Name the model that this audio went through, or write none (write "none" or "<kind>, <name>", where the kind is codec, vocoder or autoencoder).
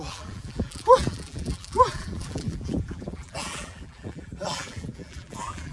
vocoder, BigVGAN v2